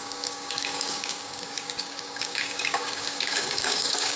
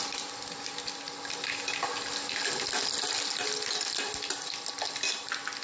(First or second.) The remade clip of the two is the first